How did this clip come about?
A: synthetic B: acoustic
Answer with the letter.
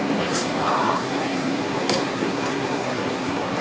A